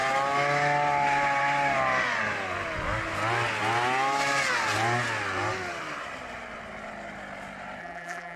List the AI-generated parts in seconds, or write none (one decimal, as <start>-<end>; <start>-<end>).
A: 7.8-8.4